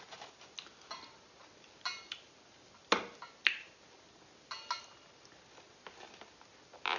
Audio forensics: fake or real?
real